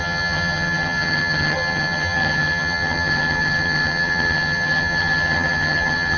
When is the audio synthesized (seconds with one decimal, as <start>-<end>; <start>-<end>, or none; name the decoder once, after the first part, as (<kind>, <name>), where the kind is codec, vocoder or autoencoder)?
0.0-6.2 (vocoder, HiFi-GAN)